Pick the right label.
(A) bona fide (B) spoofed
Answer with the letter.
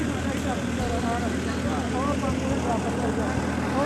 A